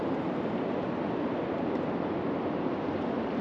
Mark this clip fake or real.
real